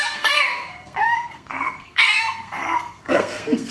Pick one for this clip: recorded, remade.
remade